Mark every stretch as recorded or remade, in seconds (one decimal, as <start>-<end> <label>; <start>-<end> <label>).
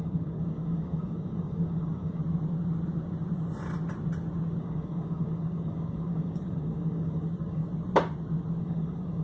0.0-2.2 remade; 2.2-4.6 recorded; 4.6-7.6 remade; 7.6-8.6 recorded; 8.6-9.2 remade